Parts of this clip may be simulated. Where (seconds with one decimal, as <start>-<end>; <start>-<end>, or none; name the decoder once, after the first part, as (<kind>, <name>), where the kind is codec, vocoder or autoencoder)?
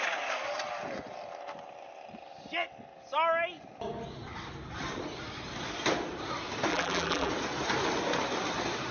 6.7-7.3 (vocoder, BigVGAN v2)